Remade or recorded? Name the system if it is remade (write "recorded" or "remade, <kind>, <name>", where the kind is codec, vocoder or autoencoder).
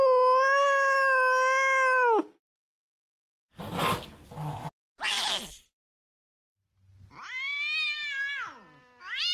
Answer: recorded